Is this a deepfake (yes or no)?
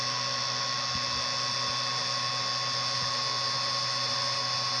no